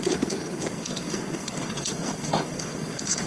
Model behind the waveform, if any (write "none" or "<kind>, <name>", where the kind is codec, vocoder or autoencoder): codec, SNAC